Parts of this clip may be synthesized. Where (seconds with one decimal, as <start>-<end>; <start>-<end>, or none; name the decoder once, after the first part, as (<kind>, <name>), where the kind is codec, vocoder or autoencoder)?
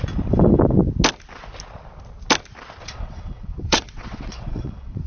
2.8-5.1 (vocoder, WaveNeXt)